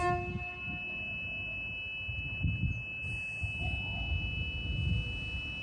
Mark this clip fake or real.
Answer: real